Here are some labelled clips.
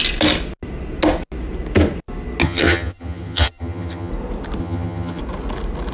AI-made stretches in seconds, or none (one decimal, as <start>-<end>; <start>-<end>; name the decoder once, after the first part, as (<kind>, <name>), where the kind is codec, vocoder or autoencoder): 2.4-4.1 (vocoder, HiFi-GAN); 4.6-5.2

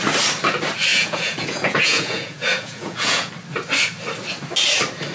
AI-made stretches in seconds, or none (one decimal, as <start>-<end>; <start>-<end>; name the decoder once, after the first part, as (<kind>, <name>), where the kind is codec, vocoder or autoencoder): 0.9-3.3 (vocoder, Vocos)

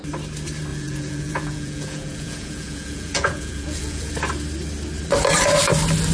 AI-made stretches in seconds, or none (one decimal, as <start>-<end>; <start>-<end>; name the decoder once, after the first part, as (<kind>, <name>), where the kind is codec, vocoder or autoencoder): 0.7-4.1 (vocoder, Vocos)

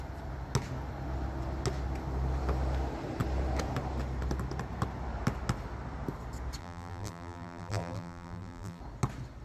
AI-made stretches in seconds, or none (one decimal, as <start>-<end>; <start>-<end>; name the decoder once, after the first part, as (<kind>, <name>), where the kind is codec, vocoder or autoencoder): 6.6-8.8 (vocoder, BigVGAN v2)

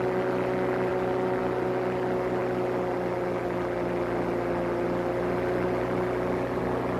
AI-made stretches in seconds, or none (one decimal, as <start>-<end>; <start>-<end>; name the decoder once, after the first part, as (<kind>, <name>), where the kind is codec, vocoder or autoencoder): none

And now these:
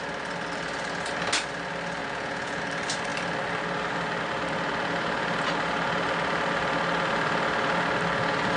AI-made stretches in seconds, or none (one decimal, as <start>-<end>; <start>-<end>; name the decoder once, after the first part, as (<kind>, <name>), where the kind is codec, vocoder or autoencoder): 2.0-2.6 (vocoder, Vocos)